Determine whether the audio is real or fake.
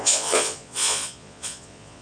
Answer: fake